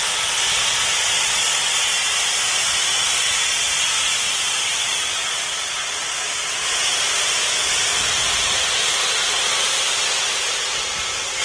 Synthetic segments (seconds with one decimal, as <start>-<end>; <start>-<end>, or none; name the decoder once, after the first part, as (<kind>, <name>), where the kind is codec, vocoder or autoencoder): none